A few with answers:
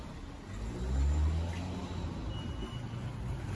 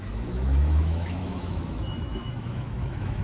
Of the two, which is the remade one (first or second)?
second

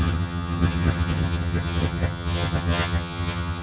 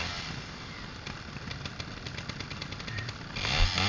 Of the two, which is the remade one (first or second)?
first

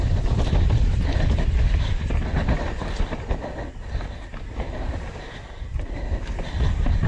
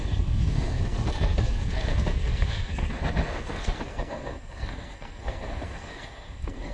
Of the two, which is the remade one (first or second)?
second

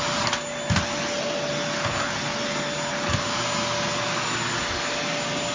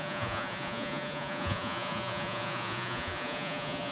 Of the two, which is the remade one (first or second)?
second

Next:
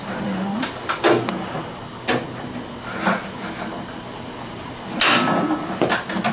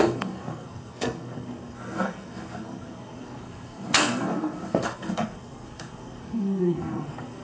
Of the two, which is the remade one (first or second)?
second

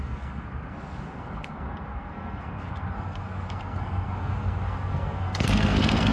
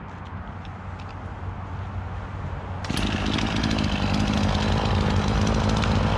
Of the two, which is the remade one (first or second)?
first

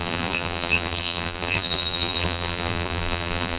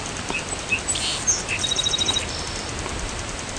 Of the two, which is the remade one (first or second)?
first